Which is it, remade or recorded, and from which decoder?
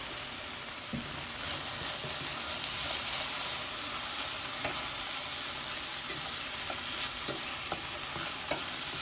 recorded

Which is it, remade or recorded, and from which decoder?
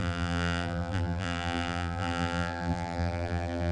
remade, vocoder, BigVGAN v2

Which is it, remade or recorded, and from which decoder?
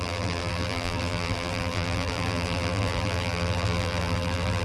remade, vocoder, BigVGAN v2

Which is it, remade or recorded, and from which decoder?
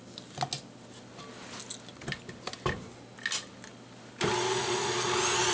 recorded